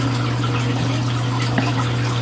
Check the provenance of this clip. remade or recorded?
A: recorded